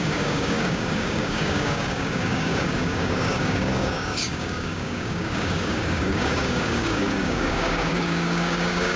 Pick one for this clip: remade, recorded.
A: remade